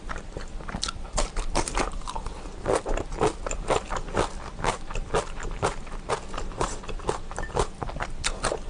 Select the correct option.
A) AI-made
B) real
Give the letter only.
B